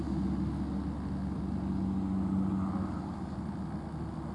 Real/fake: real